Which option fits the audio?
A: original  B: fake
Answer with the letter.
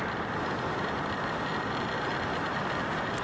A